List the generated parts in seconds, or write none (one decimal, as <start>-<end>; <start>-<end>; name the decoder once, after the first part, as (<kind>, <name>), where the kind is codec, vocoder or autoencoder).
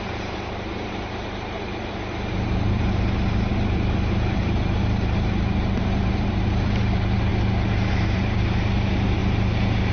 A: 0.0-7.3 (vocoder, BigVGAN v2); 7.9-9.2